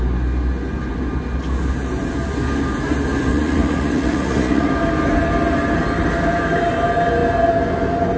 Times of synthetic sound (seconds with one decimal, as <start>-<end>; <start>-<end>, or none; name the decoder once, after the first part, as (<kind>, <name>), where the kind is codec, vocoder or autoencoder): 3.3-4.7 (vocoder, Vocos)